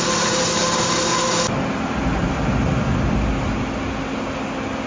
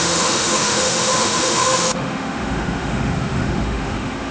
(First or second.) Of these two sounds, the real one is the first